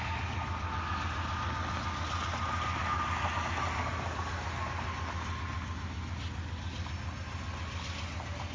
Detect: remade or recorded recorded